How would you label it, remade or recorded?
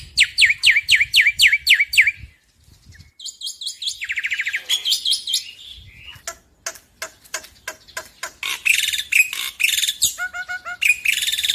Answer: recorded